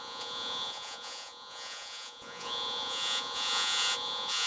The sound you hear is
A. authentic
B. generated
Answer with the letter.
B